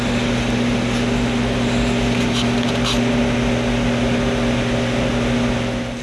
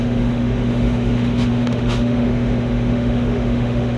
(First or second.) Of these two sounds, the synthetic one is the second